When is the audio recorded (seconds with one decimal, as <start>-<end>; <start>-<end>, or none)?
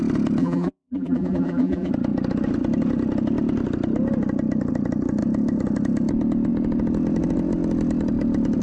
0.0-0.4; 1.9-8.6